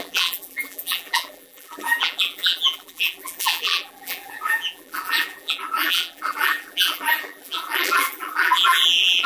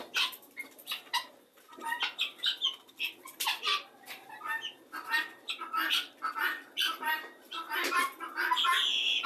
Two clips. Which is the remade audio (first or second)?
first